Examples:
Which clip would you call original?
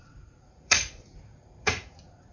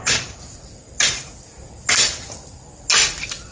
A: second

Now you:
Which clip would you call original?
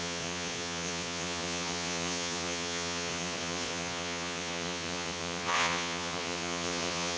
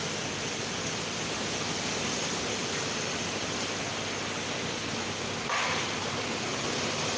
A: second